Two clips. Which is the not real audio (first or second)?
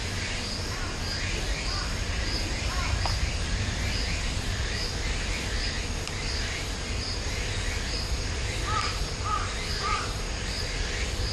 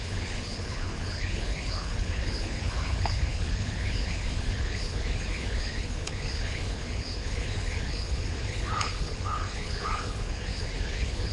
second